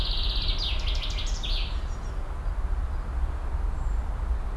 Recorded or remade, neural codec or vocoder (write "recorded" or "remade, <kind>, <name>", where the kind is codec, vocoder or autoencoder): recorded